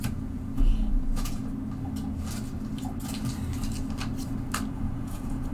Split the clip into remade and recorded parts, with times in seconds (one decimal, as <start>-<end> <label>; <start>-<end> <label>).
0.0-1.4 remade; 1.4-4.7 recorded; 4.7-5.5 remade